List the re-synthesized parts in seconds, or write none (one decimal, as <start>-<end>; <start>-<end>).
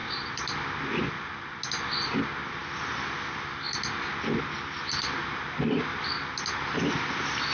none